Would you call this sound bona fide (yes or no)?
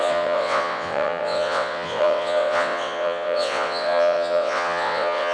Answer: no